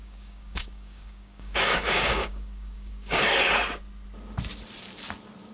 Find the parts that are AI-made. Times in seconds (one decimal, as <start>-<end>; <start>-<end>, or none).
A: 0.0-3.2